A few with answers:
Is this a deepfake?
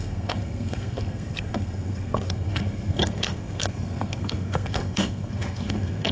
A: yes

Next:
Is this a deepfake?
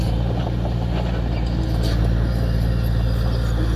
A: yes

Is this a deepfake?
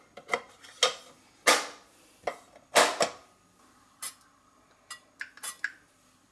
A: no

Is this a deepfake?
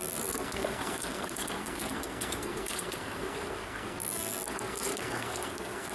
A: yes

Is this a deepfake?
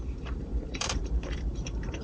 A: yes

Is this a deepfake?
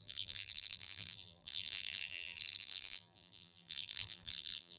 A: yes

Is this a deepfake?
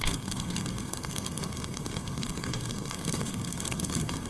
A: yes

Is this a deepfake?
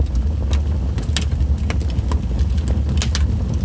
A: no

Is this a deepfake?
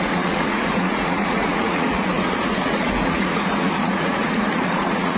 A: yes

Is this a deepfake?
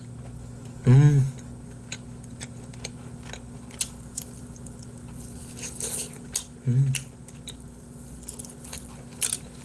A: no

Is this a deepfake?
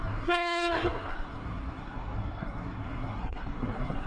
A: yes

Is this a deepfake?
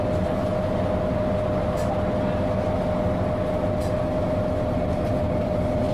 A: no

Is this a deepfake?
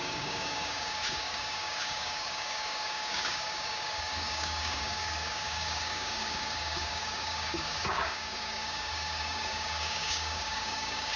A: yes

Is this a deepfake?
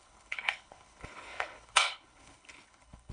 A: yes